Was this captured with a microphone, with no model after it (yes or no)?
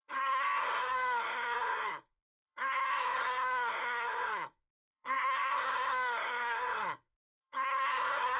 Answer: no